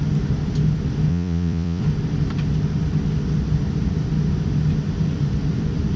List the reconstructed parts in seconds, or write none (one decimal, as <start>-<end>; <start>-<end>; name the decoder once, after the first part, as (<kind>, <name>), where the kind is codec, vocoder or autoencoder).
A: 1.1-1.8 (vocoder, Vocos)